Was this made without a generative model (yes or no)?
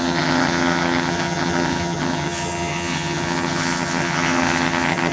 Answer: no